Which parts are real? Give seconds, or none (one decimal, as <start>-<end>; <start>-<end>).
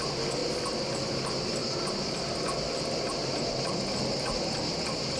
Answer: 0.0-5.2